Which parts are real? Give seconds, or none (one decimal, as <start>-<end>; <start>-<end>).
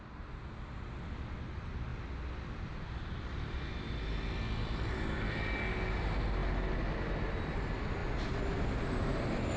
0.0-9.6